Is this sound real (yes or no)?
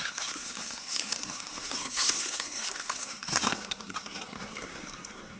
no